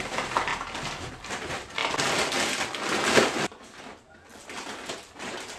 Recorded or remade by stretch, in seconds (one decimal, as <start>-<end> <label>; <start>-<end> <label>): 0.0-0.5 remade; 0.5-1.1 recorded; 1.1-1.8 remade; 1.8-3.8 recorded; 3.8-5.6 remade